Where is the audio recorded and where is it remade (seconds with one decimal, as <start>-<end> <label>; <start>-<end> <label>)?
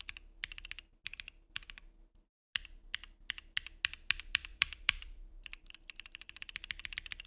0.0-4.5 recorded; 4.5-6.4 remade; 6.4-7.3 recorded